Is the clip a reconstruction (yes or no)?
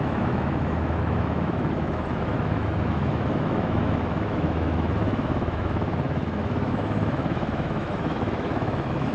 yes